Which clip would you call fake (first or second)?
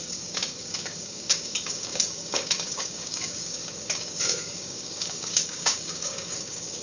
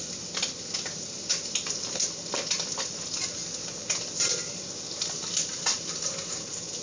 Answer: first